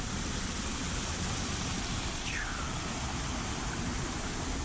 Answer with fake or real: real